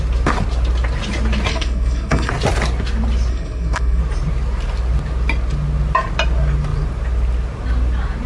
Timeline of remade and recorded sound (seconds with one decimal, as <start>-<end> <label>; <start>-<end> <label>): 0.0-1.5 recorded; 1.5-2.3 remade; 2.3-3.3 recorded; 3.3-4.0 remade; 4.0-8.3 recorded

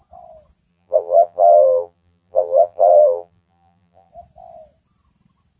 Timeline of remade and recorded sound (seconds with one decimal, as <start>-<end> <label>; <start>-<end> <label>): 0.0-0.7 recorded; 0.7-4.1 remade; 4.1-5.6 recorded

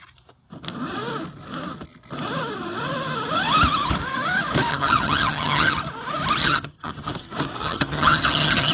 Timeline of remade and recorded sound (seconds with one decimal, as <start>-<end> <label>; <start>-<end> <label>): 0.0-4.7 recorded; 4.7-5.8 remade; 5.8-6.4 recorded; 6.4-7.1 remade; 7.1-7.6 recorded; 7.6-8.7 remade

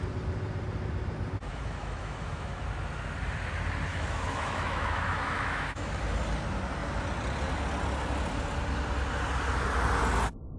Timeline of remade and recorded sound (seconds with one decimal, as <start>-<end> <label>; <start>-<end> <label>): 0.0-1.5 recorded; 1.5-2.5 remade; 2.5-3.9 recorded; 3.9-6.0 remade; 6.0-10.6 recorded

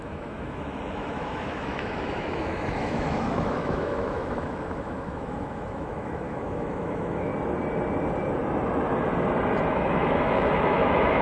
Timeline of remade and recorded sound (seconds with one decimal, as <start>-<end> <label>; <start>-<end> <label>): 0.0-7.3 remade; 7.3-9.7 recorded; 9.7-11.2 remade